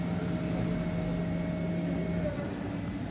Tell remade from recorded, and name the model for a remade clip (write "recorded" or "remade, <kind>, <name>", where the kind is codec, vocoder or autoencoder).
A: recorded